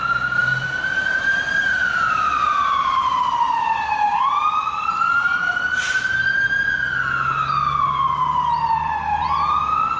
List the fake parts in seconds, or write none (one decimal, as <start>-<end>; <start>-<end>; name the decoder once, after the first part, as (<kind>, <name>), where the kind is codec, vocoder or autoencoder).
0.4-4.6 (vocoder, BigVGAN v2)